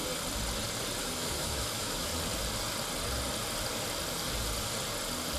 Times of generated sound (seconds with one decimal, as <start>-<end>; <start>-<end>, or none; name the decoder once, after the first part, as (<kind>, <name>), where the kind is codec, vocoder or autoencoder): 1.0-2.1 (autoencoder, DAC-VAE)